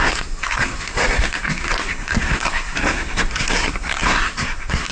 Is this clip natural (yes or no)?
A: no